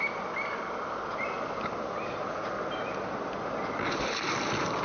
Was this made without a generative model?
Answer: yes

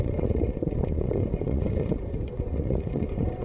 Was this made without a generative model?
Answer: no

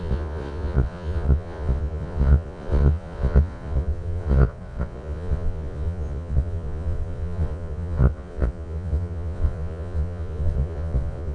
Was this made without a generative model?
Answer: no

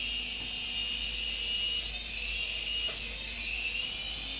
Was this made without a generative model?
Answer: yes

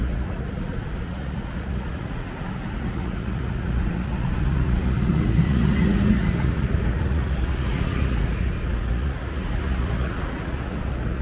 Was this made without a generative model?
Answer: no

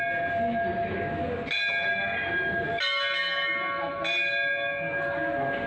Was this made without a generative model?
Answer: yes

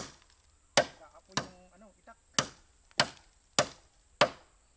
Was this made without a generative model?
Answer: yes